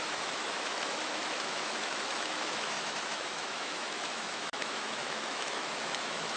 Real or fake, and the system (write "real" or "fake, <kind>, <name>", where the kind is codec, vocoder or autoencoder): fake, autoencoder, DAC-VAE